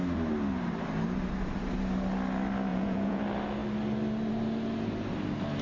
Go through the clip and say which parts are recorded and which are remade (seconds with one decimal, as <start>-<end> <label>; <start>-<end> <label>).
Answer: 0.0-2.7 recorded; 2.7-3.2 remade; 3.2-5.6 recorded